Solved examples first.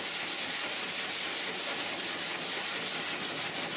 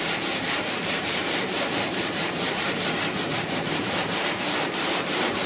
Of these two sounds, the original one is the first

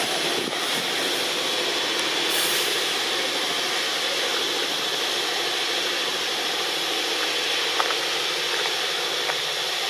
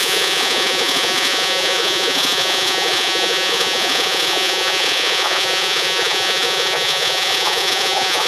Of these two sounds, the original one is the first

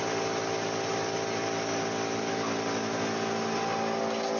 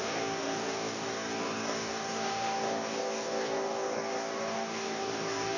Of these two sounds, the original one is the first